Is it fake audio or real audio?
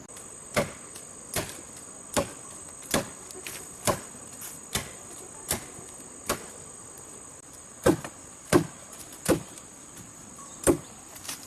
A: real